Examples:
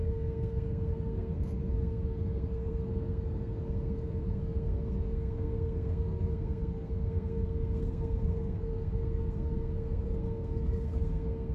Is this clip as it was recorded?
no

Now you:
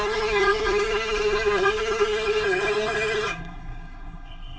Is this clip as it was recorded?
no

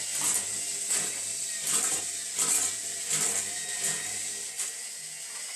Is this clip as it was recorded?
yes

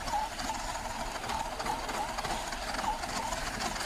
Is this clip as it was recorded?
yes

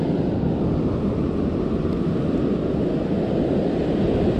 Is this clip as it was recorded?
yes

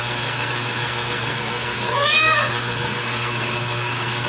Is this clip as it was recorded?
no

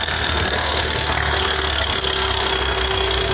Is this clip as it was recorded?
no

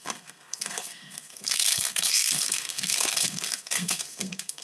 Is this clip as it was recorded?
no